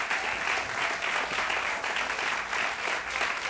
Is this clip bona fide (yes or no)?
yes